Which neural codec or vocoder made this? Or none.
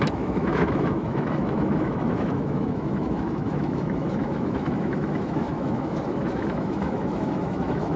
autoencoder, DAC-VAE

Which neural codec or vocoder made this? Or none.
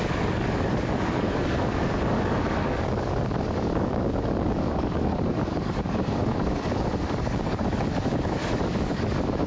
codec, DAC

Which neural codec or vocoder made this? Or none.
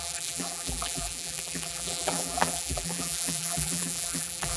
vocoder, BigVGAN v2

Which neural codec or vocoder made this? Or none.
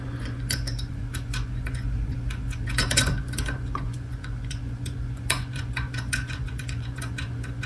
vocoder, Vocos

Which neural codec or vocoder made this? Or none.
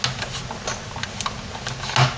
none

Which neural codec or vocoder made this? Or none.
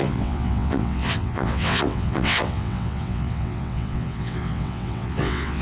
vocoder, WaveNeXt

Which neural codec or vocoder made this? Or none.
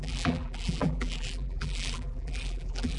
vocoder, BigVGAN v2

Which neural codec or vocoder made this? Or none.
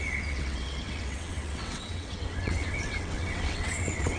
vocoder, WaveNeXt